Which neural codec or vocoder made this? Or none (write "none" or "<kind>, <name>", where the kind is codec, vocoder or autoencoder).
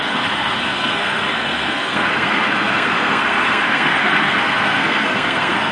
codec, SNAC